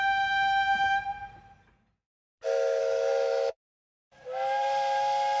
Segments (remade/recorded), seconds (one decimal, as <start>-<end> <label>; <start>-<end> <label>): 0.0-2.8 recorded; 2.8-3.8 remade; 3.8-5.4 recorded